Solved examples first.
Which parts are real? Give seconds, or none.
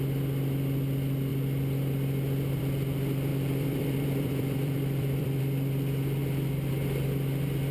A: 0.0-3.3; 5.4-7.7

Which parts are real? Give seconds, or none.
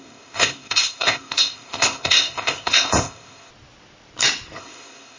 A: 3.5-4.6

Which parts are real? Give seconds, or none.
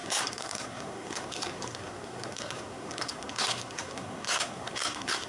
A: none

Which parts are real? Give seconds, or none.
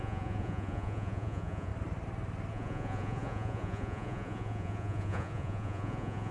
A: 1.7-2.5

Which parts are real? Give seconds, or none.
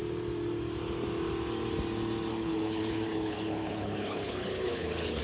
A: 0.0-2.3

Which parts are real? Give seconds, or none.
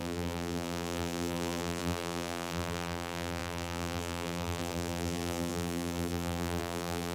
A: none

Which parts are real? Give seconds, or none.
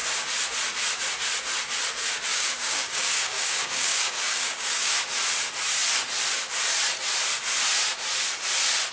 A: 0.0-2.3; 4.9-8.9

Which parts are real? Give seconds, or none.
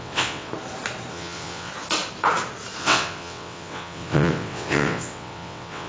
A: 0.5-1.1; 1.7-2.8